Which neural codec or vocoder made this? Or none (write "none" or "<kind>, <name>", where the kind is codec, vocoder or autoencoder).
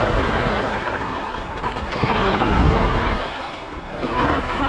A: codec, SNAC